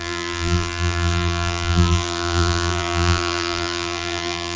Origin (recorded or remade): remade